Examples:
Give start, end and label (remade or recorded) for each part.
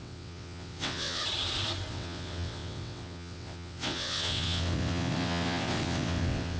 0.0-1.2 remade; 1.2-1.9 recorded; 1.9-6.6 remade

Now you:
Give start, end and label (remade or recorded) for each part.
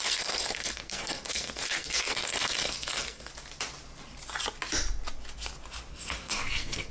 0.0-3.3 remade; 3.3-5.9 recorded; 5.9-6.9 remade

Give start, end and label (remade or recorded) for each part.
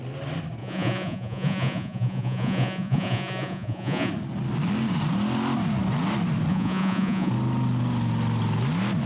0.0-0.6 recorded; 0.6-4.1 remade; 4.1-6.5 recorded; 6.5-7.3 remade; 7.3-9.1 recorded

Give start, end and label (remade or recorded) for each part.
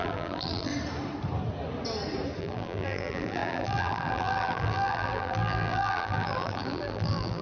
0.0-0.7 remade; 0.7-2.4 recorded; 2.4-7.4 remade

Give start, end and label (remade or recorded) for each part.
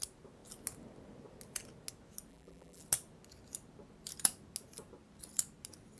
0.0-2.3 recorded; 2.3-2.8 remade; 2.8-6.0 recorded